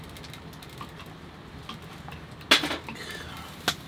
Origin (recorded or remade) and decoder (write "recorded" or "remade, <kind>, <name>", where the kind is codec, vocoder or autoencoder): recorded